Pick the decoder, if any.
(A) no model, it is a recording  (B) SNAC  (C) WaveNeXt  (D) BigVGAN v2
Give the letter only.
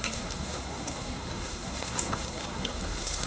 B